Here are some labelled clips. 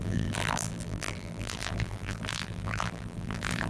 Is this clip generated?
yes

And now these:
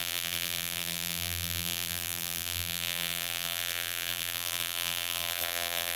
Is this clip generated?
yes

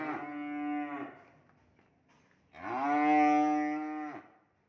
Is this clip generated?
no